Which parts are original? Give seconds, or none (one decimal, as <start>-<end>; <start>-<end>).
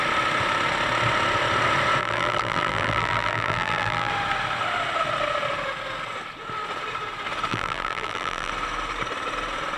0.0-2.0; 4.1-7.5; 8.5-9.8